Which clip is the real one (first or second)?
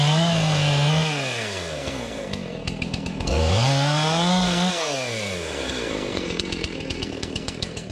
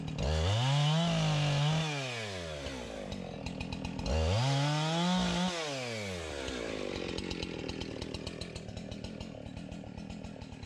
second